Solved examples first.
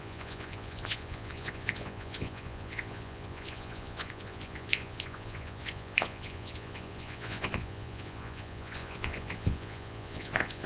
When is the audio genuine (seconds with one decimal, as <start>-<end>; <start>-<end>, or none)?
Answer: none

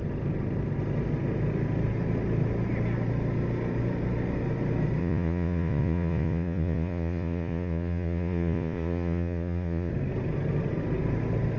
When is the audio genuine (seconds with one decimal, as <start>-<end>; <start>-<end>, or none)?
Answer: 0.0-5.0; 9.9-11.6

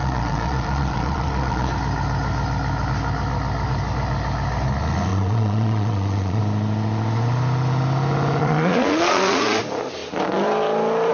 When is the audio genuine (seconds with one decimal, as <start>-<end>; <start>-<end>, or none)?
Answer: 1.7-5.1; 6.4-8.4; 9.6-11.1